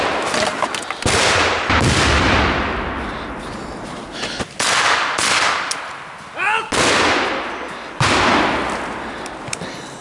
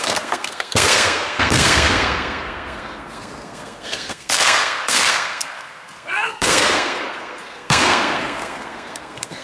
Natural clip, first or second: first